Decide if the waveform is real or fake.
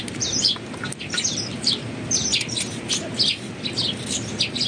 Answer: real